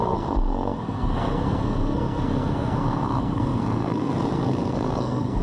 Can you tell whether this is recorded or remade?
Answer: remade